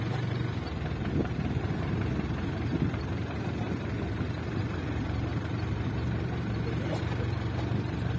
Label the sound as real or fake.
fake